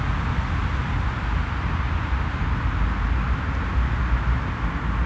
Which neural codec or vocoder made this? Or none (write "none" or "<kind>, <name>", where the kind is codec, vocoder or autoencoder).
none